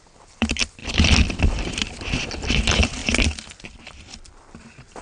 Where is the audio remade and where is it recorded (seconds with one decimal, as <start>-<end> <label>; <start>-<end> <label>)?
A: 0.0-3.0 remade; 3.0-3.6 recorded; 3.6-5.0 remade